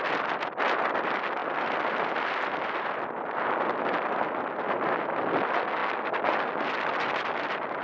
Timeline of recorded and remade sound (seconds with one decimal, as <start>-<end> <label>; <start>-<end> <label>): 0.0-7.8 recorded